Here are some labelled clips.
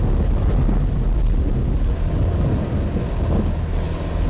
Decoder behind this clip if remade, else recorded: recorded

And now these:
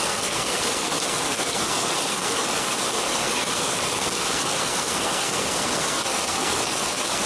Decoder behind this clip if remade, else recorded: remade, codec, SNAC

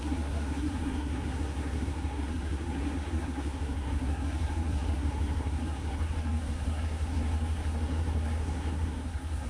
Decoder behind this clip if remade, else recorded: remade, codec, SNAC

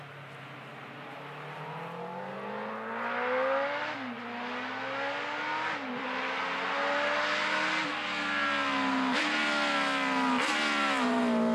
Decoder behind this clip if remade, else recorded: recorded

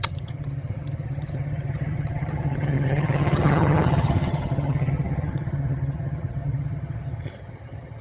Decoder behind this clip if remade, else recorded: remade, vocoder, HiFi-GAN